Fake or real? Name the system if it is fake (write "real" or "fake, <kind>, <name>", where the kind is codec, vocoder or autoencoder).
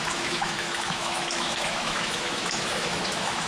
fake, autoencoder, DAC-VAE